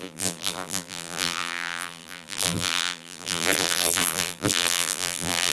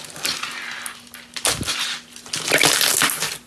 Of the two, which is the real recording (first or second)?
second